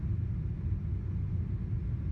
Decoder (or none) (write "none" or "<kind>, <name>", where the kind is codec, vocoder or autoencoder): none